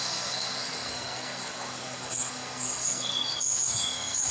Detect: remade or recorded remade